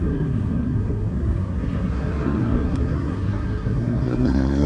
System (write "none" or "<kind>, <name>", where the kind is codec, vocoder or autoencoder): codec, SNAC